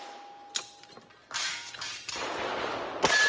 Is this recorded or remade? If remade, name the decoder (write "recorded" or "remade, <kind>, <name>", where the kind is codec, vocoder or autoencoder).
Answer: recorded